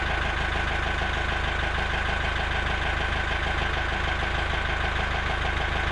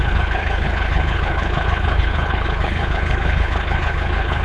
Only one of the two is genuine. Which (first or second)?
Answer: first